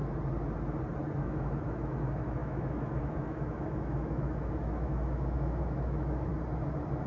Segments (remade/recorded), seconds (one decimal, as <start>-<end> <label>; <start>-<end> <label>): 0.0-1.2 recorded; 1.2-6.3 remade; 6.3-7.1 recorded